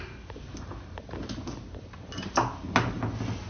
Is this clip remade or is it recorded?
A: recorded